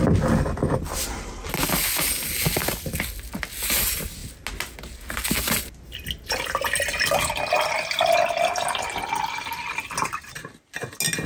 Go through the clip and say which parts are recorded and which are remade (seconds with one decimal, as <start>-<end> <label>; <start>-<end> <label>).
0.0-11.3 recorded